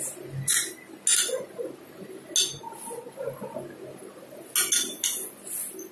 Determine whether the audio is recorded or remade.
recorded